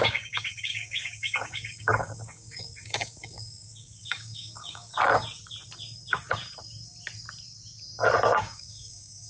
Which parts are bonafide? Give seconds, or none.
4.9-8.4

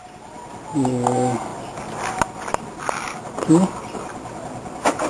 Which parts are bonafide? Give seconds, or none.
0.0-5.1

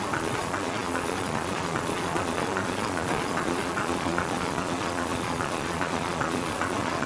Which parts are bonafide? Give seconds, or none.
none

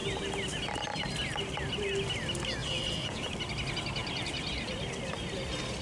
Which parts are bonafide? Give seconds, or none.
0.0-2.6; 3.3-5.8

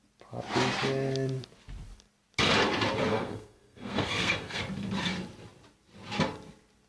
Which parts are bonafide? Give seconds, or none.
0.0-3.1; 4.6-6.9

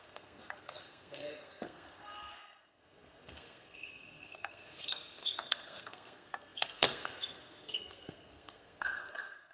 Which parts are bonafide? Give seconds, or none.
none

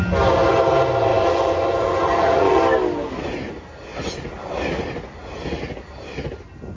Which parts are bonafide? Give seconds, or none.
0.0-1.1; 2.6-6.8